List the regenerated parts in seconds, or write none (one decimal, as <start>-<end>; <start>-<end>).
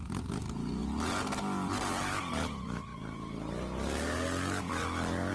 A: none